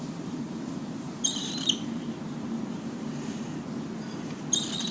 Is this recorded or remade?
recorded